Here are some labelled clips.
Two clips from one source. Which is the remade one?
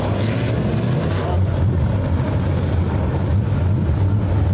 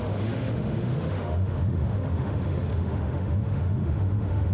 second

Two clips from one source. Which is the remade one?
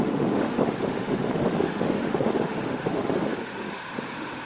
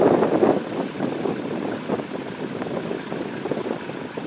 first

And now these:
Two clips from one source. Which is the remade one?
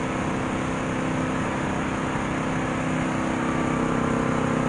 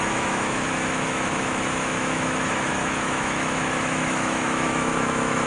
second